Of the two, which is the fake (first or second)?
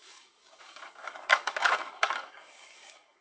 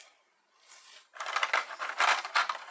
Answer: first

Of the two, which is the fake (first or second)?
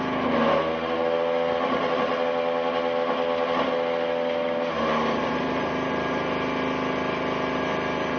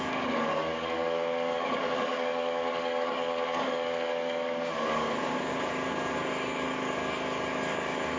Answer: second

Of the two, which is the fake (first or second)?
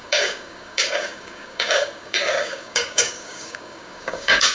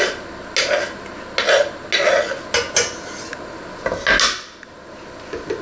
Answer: first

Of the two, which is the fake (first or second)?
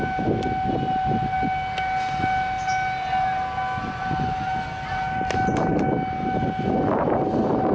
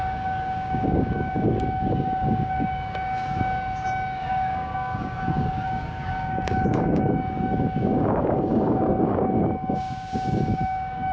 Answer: second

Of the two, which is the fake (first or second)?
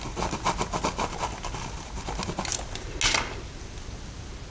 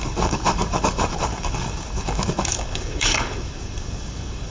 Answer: second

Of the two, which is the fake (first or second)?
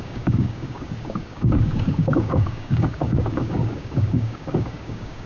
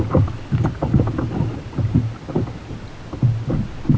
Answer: first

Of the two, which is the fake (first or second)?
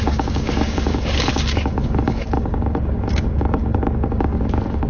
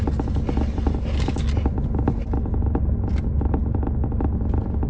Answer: first